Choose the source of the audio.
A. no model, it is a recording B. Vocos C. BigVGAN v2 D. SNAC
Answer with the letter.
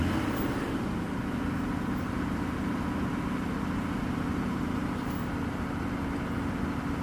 A